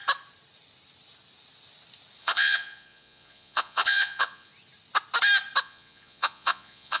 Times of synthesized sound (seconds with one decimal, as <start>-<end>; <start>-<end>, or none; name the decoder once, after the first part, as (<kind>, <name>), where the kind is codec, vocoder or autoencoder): 2.2-4.5 (vocoder, Vocos); 5.6-7.0